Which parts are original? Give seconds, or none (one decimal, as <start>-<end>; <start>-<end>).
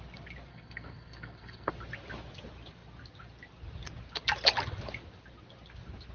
0.0-0.5; 1.7-6.1